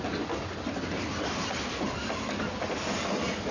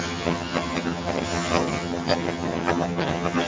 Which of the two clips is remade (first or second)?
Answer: second